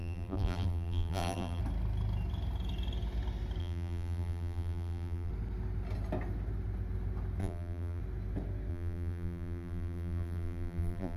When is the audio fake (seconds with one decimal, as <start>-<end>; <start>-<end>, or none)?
0.0-1.6; 3.6-5.3; 7.4-8.0; 8.7-11.2